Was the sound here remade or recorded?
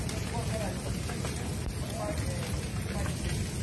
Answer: recorded